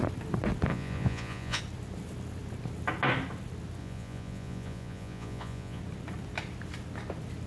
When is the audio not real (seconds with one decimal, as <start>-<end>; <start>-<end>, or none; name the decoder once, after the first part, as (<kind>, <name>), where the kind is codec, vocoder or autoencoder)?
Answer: 0.7-1.6 (vocoder, Vocos); 3.8-5.8